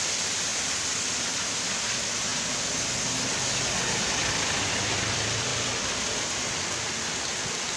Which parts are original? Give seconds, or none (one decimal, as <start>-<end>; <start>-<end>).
0.5-1.2; 2.3-4.3